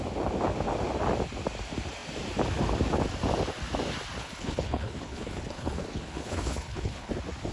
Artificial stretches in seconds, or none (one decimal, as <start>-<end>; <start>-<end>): 4.2-7.1